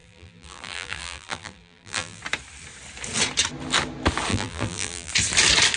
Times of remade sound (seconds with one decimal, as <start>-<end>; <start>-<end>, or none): 0.0-2.2; 4.3-5.1